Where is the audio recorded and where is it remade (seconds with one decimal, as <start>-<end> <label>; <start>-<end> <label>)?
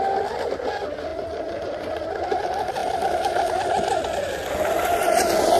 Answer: 0.0-5.6 recorded